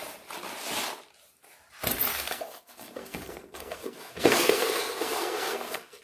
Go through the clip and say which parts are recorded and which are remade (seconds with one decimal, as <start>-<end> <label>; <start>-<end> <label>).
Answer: 0.0-2.1 recorded; 2.1-6.0 remade